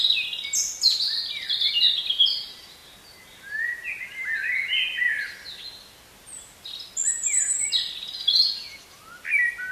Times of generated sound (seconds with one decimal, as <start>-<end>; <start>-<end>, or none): none